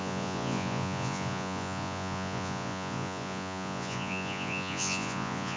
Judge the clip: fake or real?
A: fake